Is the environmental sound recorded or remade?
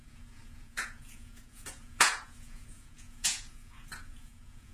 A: remade